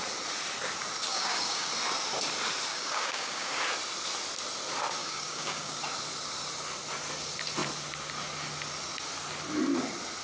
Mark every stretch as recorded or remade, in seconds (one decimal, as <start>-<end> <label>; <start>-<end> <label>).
0.0-1.1 recorded; 1.1-1.7 remade; 1.7-2.7 recorded; 2.7-3.6 remade; 3.6-5.0 recorded; 5.0-5.8 remade; 5.8-10.2 recorded